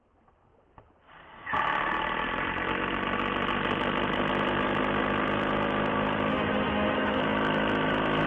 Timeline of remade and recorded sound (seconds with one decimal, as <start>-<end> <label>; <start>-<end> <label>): 0.0-6.3 recorded; 6.3-7.2 remade; 7.2-8.3 recorded